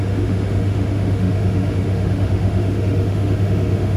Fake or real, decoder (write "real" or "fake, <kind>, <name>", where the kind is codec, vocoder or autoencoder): fake, autoencoder, DAC-VAE